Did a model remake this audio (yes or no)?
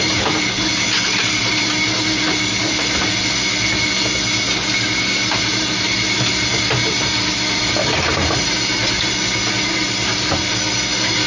no